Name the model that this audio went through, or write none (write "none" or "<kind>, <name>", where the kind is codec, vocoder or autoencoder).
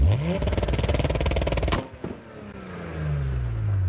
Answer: none